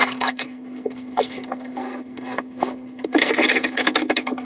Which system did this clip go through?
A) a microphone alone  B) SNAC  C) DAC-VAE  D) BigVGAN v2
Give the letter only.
B